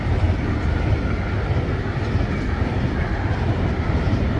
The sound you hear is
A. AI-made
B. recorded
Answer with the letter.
B